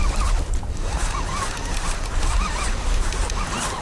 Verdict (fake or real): real